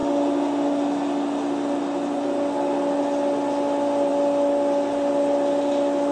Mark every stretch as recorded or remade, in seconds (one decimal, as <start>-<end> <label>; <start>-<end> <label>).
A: 0.0-6.1 recorded